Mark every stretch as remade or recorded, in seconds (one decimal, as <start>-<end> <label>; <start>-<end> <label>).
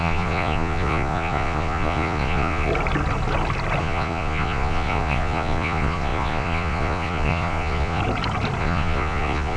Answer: 0.0-2.7 remade; 2.7-3.8 recorded; 3.8-8.0 remade; 8.0-8.6 recorded; 8.6-9.6 remade